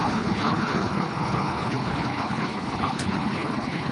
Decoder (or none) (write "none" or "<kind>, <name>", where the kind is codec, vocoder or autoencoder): codec, HILCodec